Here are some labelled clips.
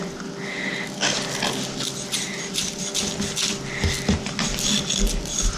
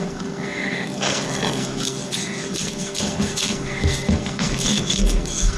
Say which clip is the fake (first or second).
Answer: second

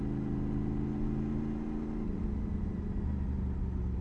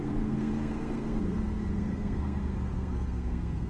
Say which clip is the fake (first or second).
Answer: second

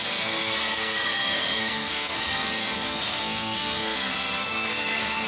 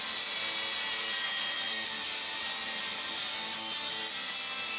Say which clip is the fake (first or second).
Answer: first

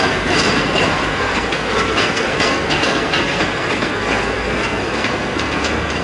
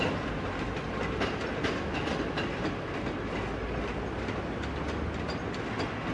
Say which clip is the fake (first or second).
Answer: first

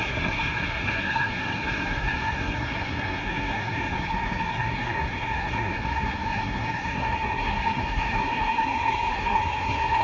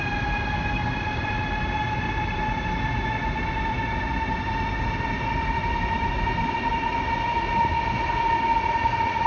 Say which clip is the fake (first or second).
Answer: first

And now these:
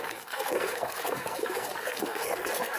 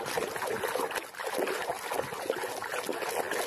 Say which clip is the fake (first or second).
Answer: first